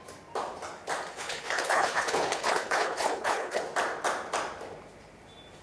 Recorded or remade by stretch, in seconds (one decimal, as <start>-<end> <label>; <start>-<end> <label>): 0.0-1.1 recorded; 1.1-3.6 remade; 3.6-5.6 recorded